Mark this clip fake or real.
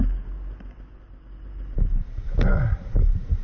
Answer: real